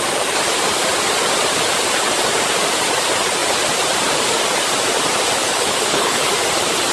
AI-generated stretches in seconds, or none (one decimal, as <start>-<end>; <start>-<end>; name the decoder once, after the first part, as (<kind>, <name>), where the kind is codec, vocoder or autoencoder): 5.4-6.3 (codec, HILCodec)